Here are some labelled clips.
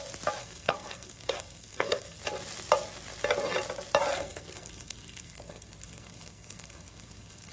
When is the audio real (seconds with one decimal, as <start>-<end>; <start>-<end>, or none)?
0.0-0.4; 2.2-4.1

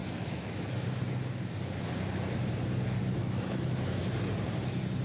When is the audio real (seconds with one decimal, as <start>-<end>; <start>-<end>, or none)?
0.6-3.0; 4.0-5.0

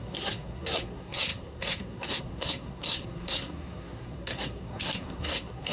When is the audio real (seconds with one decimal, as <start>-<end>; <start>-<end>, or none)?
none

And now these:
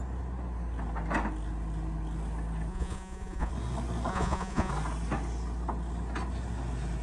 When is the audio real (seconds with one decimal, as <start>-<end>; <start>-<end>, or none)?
0.0-2.7; 3.5-4.1; 4.7-7.0

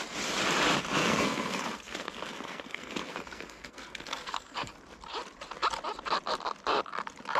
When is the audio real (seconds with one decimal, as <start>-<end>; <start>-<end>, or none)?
0.0-1.0; 4.7-7.4

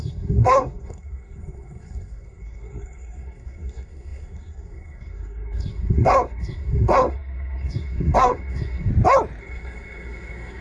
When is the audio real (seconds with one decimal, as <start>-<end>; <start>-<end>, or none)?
8.9-9.4

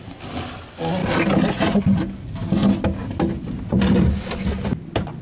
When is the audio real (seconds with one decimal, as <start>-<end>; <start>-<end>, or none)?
0.0-5.2

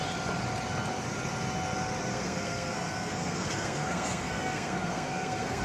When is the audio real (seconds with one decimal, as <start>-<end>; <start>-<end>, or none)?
0.0-2.1